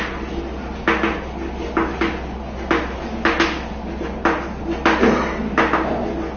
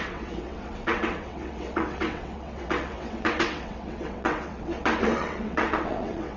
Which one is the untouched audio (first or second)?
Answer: first